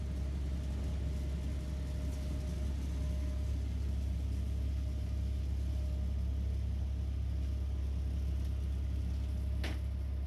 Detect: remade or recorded recorded